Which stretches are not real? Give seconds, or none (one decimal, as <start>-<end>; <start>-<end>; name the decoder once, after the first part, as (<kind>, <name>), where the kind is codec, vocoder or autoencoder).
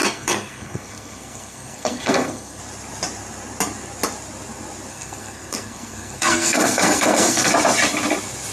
0.0-2.6 (codec, SNAC); 4.9-7.5